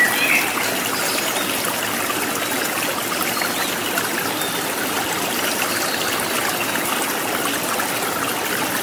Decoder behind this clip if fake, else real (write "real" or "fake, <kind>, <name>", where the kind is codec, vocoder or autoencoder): real